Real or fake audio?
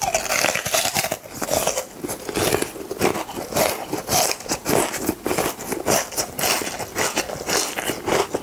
real